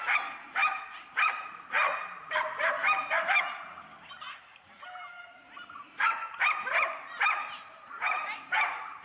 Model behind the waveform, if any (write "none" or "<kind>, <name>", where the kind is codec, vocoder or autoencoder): vocoder, BigVGAN v2